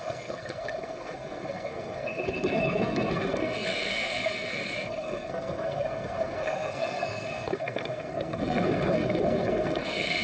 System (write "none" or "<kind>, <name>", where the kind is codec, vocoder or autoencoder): codec, SNAC